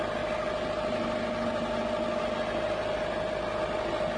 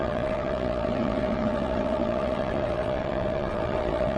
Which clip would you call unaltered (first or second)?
first